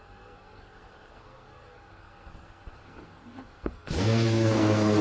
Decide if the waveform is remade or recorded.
remade